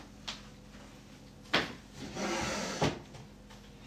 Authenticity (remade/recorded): recorded